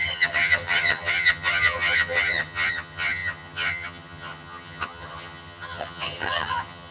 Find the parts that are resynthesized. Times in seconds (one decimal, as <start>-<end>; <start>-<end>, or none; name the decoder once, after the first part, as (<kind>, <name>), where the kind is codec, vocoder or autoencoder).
0.0-6.9 (vocoder, HiFi-GAN)